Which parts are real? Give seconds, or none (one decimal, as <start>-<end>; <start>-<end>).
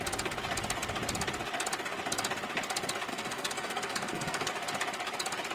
0.0-3.1; 4.5-5.5